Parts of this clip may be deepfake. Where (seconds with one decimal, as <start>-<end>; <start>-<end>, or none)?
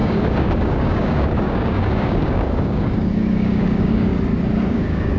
0.0-4.1; 4.7-5.2